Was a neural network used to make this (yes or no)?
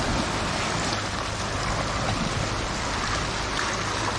no